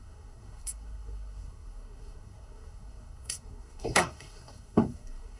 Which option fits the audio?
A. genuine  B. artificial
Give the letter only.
B